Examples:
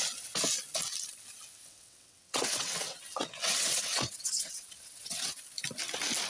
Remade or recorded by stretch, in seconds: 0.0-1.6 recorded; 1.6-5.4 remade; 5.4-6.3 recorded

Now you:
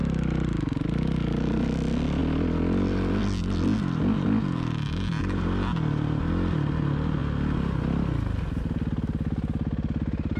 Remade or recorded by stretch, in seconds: 0.0-10.4 recorded

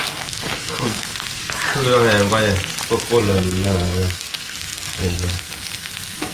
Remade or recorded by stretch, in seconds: 0.0-1.4 remade; 1.4-3.2 recorded; 3.2-6.3 remade

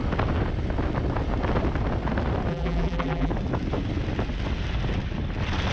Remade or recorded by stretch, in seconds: 0.0-2.5 recorded; 2.5-3.3 remade; 3.3-5.7 recorded

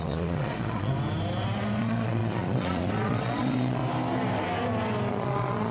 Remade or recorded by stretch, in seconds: 0.0-0.9 remade; 0.9-1.8 recorded; 1.8-3.8 remade; 3.8-5.1 recorded; 5.1-5.7 remade

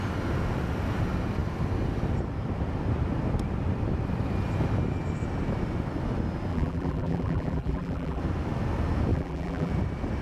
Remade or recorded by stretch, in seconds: 0.0-6.5 recorded; 6.5-8.2 remade; 8.2-9.1 recorded; 9.1-9.7 remade; 9.7-10.2 recorded

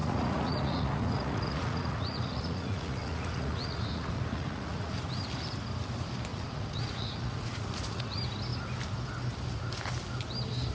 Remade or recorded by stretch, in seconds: 0.0-5.0 remade; 5.0-6.3 recorded; 6.3-8.0 remade; 8.0-10.7 recorded